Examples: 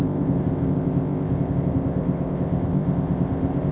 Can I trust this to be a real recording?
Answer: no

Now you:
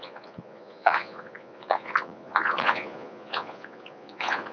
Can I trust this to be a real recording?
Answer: no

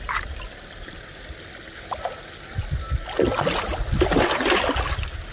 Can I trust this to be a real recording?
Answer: yes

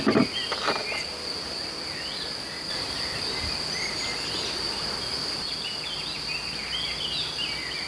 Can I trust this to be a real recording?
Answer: yes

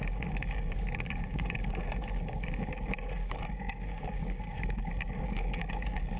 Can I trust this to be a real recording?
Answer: no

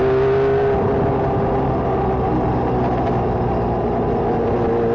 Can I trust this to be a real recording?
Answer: yes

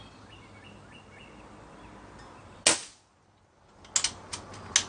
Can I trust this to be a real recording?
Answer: yes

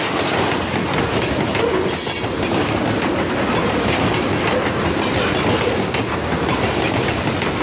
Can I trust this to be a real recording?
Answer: yes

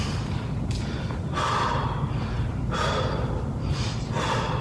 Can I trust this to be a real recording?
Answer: yes